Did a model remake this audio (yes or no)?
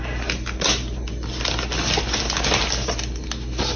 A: no